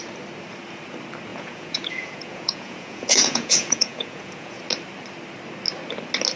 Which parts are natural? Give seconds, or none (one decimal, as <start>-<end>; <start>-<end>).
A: 0.0-1.3; 4.6-6.4